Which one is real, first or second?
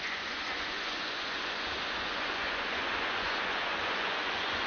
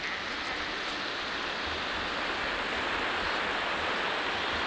second